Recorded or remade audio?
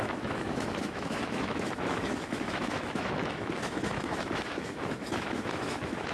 remade